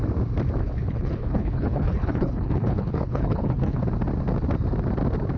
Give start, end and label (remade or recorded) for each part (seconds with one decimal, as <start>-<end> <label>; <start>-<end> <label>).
0.0-0.6 recorded; 0.6-3.8 remade; 3.8-5.4 recorded